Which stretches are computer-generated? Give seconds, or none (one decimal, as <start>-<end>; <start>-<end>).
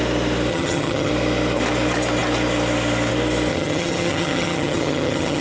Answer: 0.5-1.1; 3.5-5.4